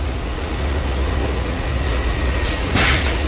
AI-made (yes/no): yes